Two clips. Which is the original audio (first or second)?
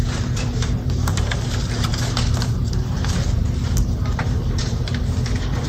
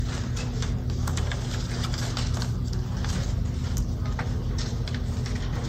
second